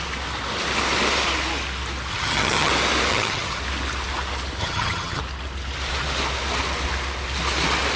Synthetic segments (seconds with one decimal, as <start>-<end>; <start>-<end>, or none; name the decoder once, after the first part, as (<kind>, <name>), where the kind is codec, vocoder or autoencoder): 2.1-2.7 (vocoder, HiFi-GAN); 3.1-3.6; 4.6-5.2